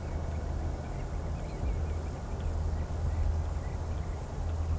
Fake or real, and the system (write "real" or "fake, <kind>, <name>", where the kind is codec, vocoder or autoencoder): real